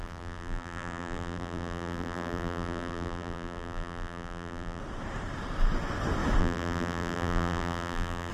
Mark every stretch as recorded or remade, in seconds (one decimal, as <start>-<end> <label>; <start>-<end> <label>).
0.0-4.8 remade; 4.8-6.4 recorded; 6.4-8.3 remade